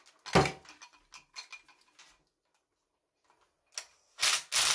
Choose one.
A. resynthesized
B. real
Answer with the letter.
B